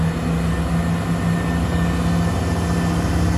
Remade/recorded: recorded